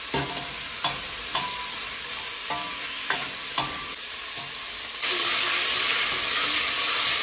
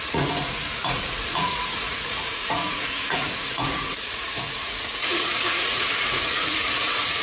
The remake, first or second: second